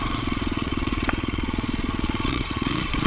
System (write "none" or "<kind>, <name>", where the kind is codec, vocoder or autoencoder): vocoder, Vocos